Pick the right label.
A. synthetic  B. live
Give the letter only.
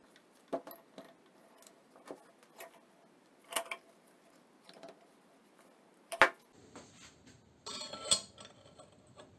B